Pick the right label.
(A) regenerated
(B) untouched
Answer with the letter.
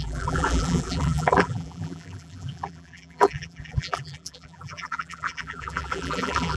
A